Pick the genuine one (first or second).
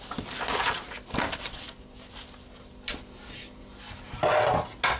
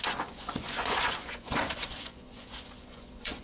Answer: first